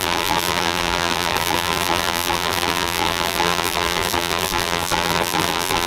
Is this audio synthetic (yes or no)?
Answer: yes